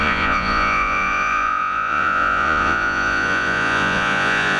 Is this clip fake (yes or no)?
yes